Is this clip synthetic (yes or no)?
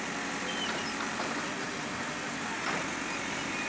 no